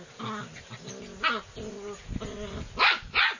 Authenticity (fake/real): real